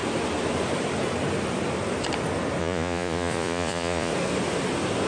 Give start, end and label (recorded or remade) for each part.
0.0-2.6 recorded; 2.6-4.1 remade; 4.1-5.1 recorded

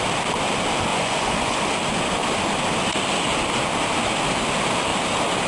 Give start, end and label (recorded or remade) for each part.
0.0-0.9 recorded; 0.9-1.6 remade; 1.6-5.5 recorded

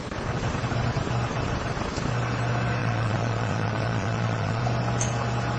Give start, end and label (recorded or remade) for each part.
0.0-2.8 recorded; 2.8-4.6 remade; 4.6-5.6 recorded